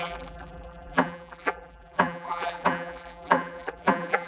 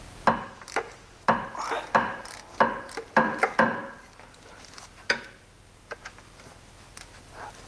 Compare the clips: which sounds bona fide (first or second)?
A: second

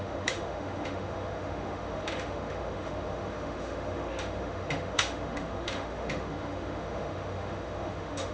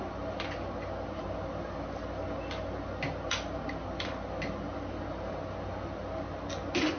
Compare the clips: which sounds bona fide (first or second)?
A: second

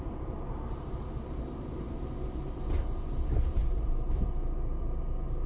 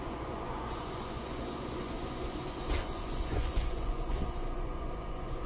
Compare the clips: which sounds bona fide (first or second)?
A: first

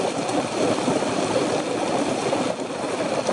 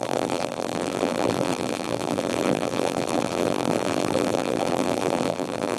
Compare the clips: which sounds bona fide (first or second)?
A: first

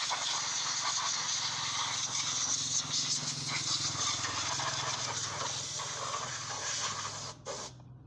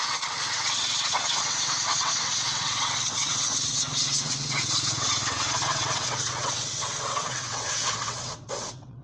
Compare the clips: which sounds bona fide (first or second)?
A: first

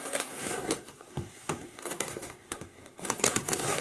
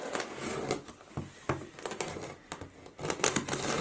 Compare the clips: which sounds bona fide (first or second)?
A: second